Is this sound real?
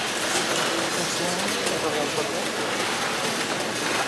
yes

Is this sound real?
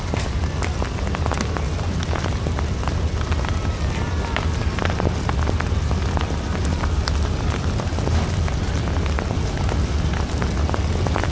yes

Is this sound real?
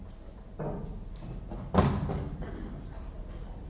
yes